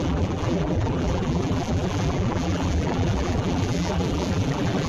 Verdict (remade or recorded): remade